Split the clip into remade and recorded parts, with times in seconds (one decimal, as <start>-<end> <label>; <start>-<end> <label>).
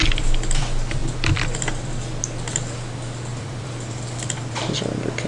0.0-3.3 recorded; 3.3-4.6 remade; 4.6-5.3 recorded